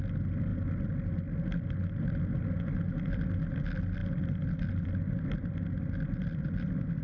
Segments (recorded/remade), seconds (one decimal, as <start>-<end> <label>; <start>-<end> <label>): 0.0-7.0 recorded